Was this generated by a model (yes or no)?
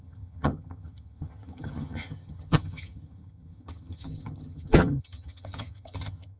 yes